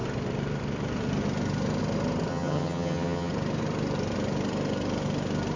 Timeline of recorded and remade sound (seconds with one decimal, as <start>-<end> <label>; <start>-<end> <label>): 0.0-2.3 recorded; 2.3-3.3 remade; 3.3-5.6 recorded